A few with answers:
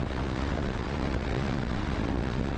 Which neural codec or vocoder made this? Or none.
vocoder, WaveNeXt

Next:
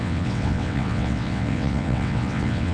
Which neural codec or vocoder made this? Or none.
vocoder, WaveNeXt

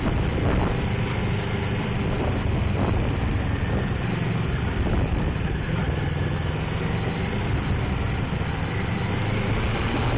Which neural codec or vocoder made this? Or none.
none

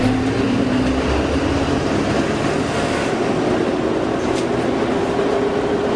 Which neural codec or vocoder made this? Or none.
none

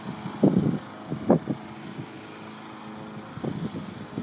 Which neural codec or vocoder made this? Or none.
none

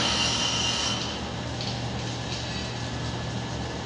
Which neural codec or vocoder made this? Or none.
none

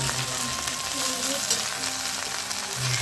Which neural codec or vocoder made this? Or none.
none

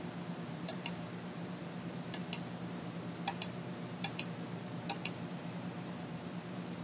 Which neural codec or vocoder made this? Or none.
vocoder, BigVGAN v2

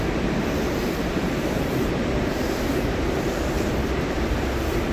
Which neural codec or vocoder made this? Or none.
vocoder, BigVGAN v2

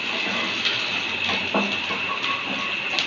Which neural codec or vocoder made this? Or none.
none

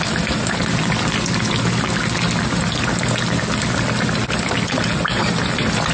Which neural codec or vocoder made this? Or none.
none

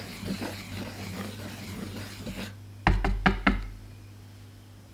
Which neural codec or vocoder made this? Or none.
none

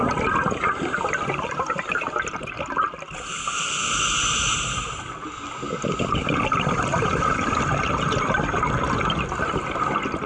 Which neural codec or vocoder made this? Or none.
none